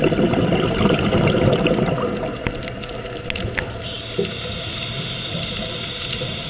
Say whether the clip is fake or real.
real